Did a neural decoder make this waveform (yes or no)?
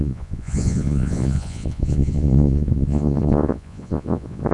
yes